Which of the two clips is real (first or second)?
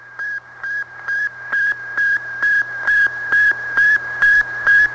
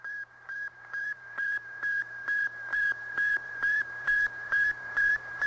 first